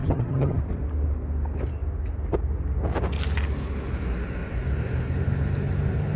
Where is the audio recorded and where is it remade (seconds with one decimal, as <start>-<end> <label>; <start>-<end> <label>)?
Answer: 0.0-0.6 remade; 0.6-6.2 recorded